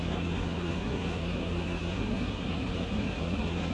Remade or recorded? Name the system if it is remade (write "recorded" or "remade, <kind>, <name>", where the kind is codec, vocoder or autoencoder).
remade, codec, SNAC